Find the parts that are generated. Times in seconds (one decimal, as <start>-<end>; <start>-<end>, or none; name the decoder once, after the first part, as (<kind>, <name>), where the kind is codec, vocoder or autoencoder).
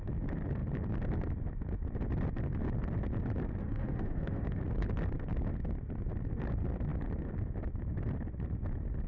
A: 3.6-4.6 (autoencoder, DAC-VAE)